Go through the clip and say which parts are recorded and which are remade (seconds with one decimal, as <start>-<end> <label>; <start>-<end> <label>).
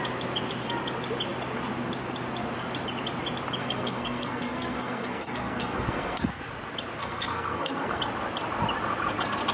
0.0-3.6 recorded; 3.6-6.4 remade; 6.4-7.0 recorded; 7.0-8.0 remade; 8.0-9.5 recorded